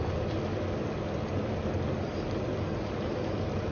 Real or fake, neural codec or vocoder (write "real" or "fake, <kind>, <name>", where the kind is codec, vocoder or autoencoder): real